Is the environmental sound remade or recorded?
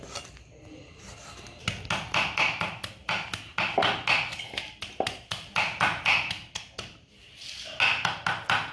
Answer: recorded